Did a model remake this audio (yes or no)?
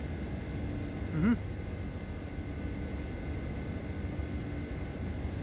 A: no